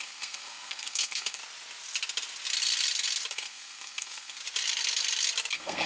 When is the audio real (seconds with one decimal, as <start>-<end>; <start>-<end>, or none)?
1.4-3.3; 4.4-5.5